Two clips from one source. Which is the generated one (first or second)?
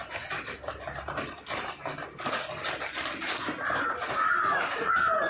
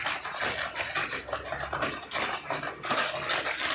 first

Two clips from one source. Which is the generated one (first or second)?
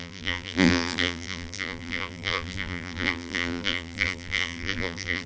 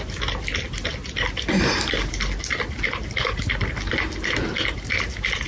first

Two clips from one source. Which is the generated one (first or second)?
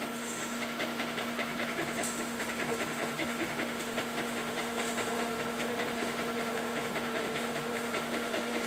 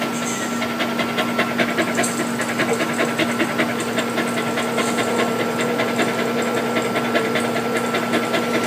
first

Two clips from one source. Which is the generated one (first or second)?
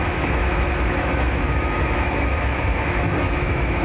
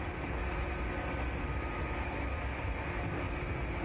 first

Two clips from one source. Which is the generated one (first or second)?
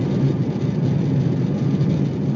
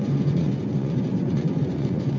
second